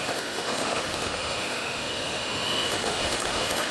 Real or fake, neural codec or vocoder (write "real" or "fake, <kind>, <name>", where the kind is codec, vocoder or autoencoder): fake, autoencoder, DAC-VAE